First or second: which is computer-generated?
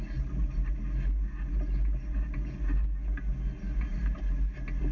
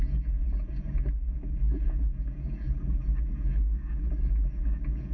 second